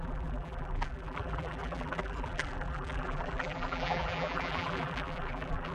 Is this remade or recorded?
remade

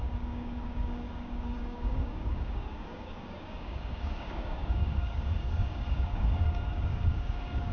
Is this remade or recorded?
remade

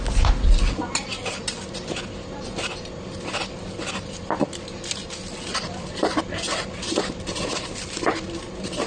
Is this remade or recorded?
recorded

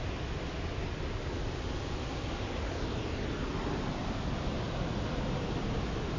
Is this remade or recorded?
recorded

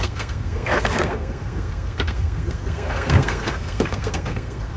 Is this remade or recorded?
remade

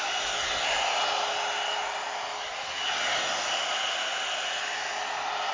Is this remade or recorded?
recorded